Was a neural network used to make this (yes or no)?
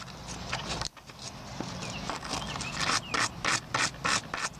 no